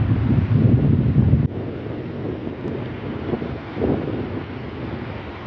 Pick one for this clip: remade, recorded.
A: recorded